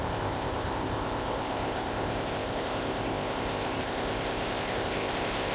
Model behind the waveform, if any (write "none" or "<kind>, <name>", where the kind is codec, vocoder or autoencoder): codec, ZipCodec